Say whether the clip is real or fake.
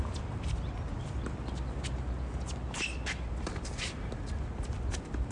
real